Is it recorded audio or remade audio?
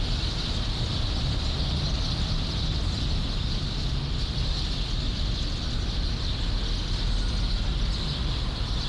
recorded